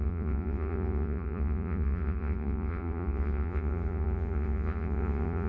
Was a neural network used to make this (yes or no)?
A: yes